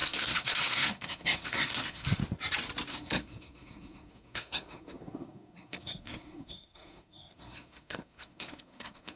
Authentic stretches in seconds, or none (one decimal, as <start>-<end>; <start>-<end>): 2.2-2.9